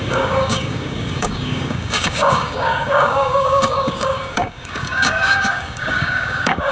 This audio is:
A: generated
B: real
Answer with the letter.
A